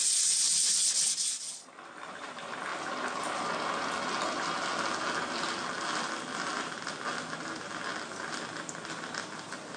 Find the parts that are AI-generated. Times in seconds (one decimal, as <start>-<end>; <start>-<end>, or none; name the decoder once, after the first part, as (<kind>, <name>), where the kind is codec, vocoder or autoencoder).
none